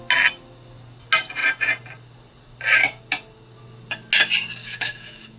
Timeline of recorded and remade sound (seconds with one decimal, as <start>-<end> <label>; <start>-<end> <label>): 0.0-4.6 recorded; 4.6-5.4 remade